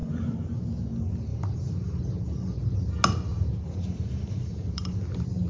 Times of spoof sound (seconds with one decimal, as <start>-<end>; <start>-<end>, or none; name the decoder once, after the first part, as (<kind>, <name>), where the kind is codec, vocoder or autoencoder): 0.0-0.6 (vocoder, BigVGAN v2); 1.3-2.0; 3.3-5.0